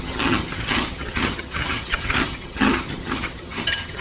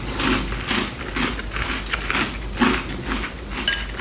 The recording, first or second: second